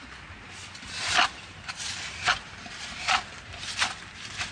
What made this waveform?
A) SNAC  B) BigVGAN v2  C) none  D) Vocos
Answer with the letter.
B